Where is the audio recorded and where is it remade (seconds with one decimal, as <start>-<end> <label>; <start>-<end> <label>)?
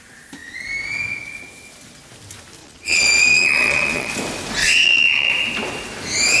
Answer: 0.0-2.6 recorded; 2.6-4.1 remade; 4.1-4.6 recorded; 4.6-5.3 remade; 5.3-6.4 recorded